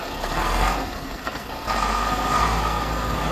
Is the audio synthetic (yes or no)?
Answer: yes